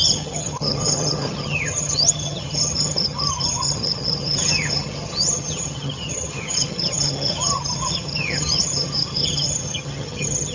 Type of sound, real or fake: fake